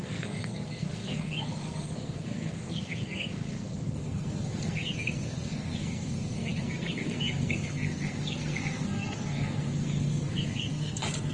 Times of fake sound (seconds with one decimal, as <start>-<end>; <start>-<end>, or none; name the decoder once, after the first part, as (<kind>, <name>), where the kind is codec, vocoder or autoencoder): 0.0-11.3 (codec, SNAC)